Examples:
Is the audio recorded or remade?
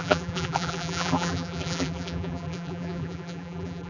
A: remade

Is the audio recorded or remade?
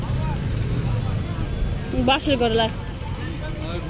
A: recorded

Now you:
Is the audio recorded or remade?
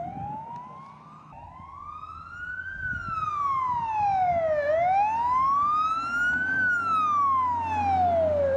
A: recorded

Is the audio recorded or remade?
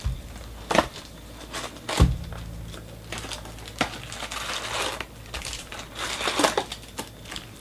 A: recorded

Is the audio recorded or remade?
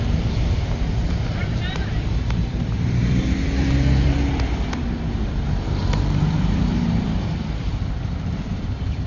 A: remade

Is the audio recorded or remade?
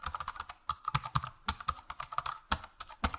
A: recorded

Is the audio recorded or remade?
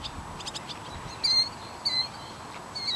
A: recorded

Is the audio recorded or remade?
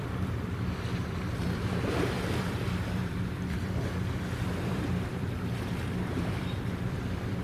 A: remade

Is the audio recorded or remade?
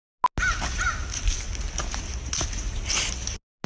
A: recorded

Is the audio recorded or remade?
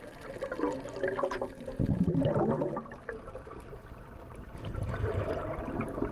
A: recorded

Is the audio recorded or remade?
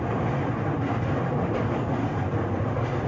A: recorded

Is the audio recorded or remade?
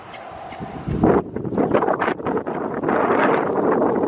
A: recorded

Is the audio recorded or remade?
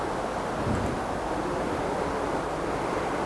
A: remade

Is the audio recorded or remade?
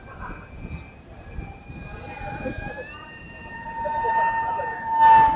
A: remade